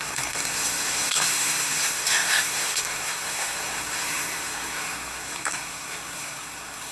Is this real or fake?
fake